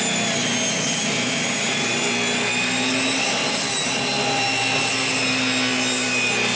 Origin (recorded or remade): recorded